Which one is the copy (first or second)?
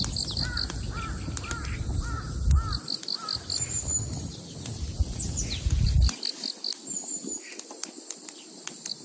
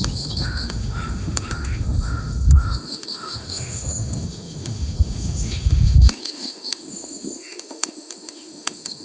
second